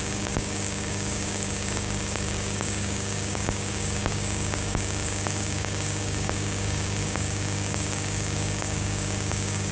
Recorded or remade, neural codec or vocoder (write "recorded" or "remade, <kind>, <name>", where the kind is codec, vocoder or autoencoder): remade, codec, DAC